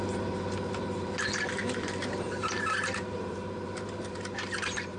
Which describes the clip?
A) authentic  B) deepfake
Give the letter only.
B